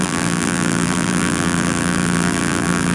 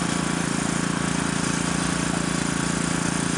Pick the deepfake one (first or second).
first